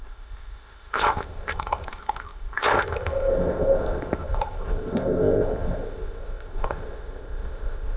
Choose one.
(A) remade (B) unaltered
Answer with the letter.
A